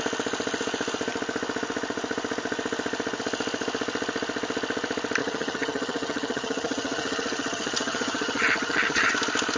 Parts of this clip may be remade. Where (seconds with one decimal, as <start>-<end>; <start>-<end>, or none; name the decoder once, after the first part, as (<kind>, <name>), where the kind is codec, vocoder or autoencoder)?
5.2-9.1 (vocoder, HiFi-GAN)